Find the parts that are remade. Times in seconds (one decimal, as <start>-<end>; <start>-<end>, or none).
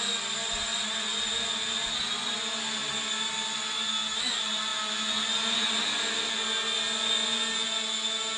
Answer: none